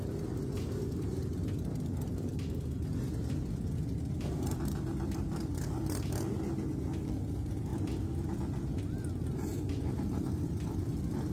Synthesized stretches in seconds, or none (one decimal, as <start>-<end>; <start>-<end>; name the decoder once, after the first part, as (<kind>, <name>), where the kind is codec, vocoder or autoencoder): 7.7-10.9 (vocoder, BigVGAN v2)